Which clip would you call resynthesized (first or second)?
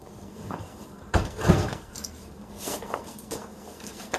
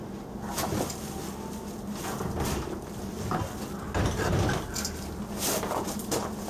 first